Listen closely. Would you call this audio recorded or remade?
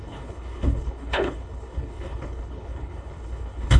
remade